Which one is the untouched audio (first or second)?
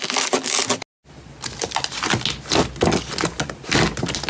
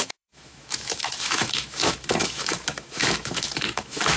first